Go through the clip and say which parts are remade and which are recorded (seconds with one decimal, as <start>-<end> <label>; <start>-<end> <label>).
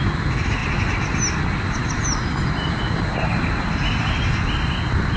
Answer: 0.0-5.2 recorded